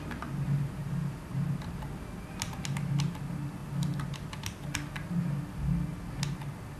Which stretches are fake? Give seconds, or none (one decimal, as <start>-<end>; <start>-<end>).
none